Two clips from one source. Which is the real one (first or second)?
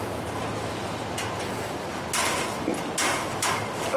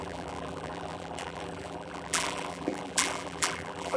first